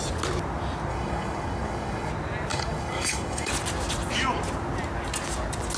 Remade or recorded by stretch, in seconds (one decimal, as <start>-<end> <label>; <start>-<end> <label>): 0.0-0.9 recorded; 0.9-2.1 remade; 2.1-2.5 recorded; 2.5-3.5 remade; 3.5-5.8 recorded